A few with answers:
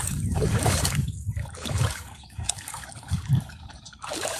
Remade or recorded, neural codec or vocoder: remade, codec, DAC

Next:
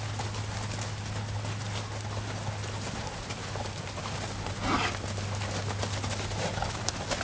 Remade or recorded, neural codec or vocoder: recorded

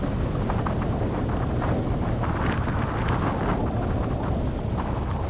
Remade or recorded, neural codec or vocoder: recorded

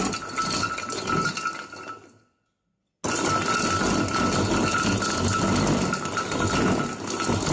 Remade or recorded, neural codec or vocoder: recorded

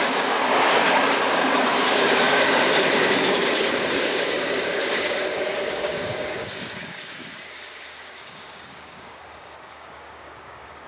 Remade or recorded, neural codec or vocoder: remade, codec, DAC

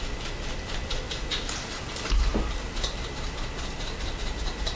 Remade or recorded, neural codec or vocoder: recorded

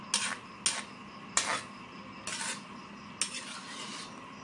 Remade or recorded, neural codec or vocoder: recorded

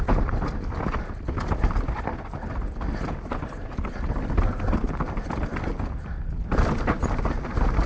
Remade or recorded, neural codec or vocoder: recorded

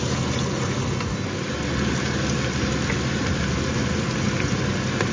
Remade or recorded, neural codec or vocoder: recorded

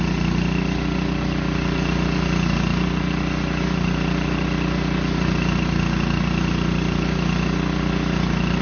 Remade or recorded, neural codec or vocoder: recorded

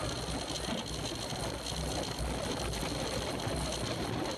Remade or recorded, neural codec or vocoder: recorded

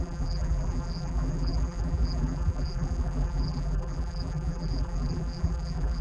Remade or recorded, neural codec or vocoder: remade, vocoder, BigVGAN v2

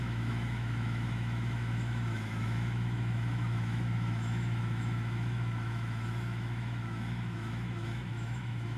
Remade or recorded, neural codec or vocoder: remade, autoencoder, DAC-VAE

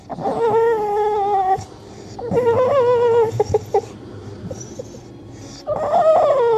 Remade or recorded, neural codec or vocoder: recorded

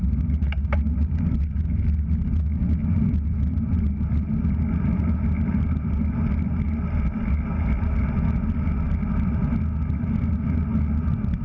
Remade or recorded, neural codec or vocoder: recorded